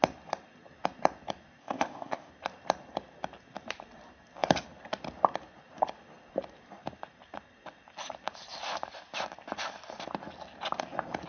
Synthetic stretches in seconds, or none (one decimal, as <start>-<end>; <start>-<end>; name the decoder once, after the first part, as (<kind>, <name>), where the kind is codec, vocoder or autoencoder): 1.6-2.3 (codec, ZipCodec)